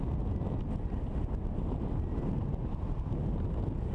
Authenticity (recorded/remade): recorded